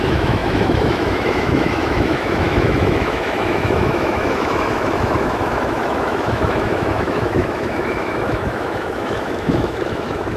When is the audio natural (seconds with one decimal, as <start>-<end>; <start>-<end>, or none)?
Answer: none